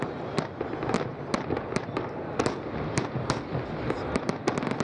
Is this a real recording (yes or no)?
yes